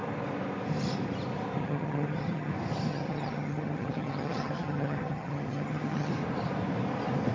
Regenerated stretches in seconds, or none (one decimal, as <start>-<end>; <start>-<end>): 1.6-2.5; 2.9-6.1